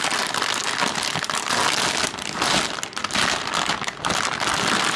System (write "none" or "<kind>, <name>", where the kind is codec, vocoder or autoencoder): none